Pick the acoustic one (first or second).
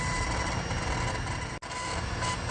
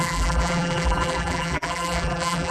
first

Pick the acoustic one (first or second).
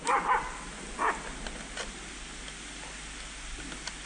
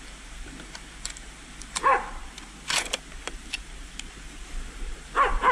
first